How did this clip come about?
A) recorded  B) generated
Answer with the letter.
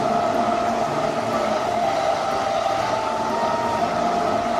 A